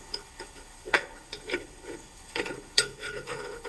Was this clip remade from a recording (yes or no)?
yes